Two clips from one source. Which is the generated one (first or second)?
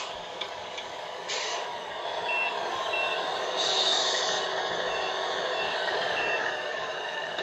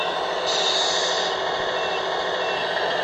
first